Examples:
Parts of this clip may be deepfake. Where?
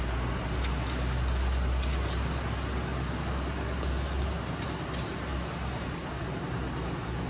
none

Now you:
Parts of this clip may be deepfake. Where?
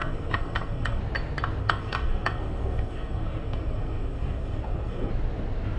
0.0-1.0; 1.6-5.1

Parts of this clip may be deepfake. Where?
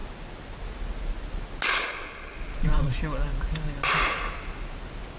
1.9-3.0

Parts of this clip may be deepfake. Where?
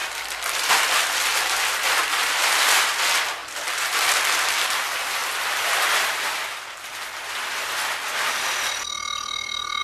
0.0-3.0